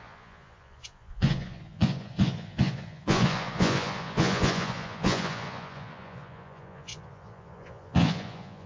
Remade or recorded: remade